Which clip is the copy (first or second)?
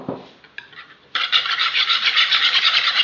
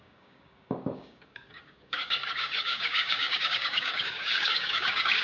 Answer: second